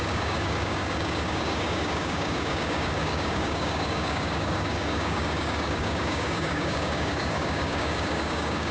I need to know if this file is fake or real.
fake